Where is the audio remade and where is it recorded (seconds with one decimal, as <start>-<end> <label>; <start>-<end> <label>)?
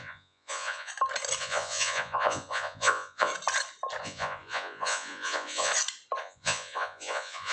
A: 0.0-0.9 remade; 0.9-1.4 recorded; 1.4-3.3 remade; 3.3-4.0 recorded; 4.0-5.7 remade; 5.7-6.2 recorded; 6.2-7.5 remade